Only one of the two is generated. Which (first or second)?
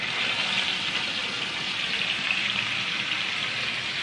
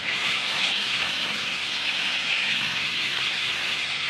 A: second